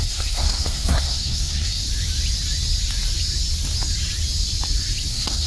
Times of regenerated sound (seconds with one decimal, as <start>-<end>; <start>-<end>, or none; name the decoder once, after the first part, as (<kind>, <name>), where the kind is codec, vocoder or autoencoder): 0.0-1.8 (codec, SNAC); 5.1-5.5